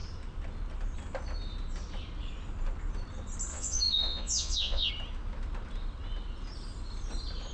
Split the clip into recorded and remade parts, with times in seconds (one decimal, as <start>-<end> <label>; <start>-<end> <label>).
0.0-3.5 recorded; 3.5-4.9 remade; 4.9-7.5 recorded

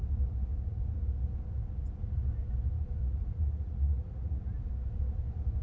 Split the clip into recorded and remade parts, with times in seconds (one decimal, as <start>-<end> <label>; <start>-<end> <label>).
0.0-3.0 recorded; 3.0-4.4 remade; 4.4-5.6 recorded

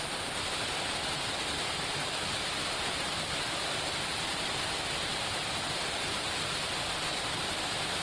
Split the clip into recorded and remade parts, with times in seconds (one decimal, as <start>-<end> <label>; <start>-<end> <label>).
0.0-8.0 recorded

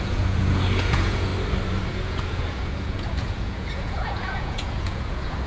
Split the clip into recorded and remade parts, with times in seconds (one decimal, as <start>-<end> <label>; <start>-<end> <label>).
0.0-1.3 remade; 1.3-1.9 recorded; 1.9-5.5 remade

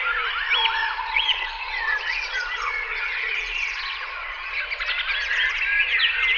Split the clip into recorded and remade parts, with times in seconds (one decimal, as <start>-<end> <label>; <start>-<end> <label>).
0.0-0.8 recorded; 0.8-4.6 remade; 4.6-6.4 recorded

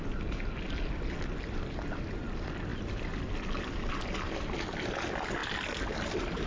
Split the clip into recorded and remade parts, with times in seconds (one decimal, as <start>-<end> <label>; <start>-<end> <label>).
0.0-6.5 recorded

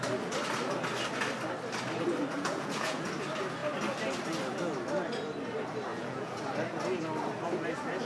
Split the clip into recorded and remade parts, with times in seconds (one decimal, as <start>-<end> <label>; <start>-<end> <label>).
0.0-2.3 recorded; 2.3-3.1 remade; 3.1-5.9 recorded; 5.9-6.4 remade; 6.4-8.0 recorded